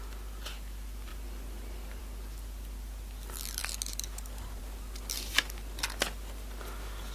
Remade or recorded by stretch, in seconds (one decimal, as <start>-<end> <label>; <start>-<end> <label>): 0.0-7.1 recorded